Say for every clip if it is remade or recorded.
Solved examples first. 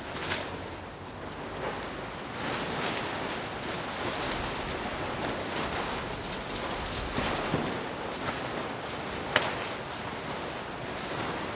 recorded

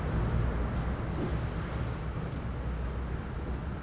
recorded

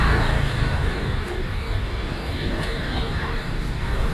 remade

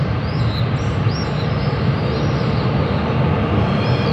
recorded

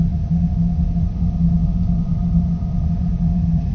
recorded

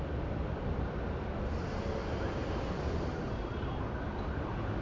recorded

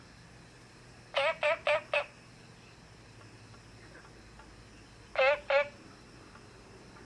recorded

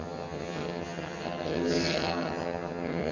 remade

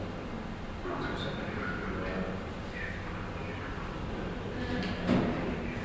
recorded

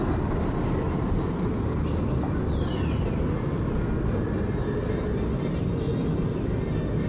recorded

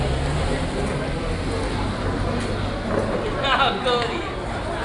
recorded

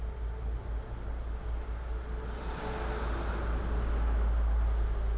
recorded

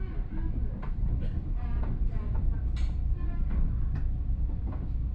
recorded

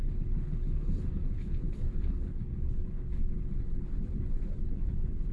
remade